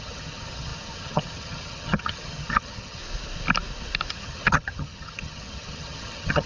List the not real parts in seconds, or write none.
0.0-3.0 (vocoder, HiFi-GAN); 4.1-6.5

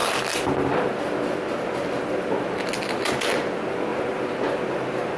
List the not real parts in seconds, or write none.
none